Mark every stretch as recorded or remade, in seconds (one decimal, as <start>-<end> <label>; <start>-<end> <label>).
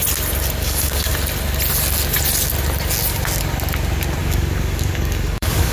0.0-0.6 recorded; 0.6-1.1 remade; 1.1-4.2 recorded; 4.2-5.7 remade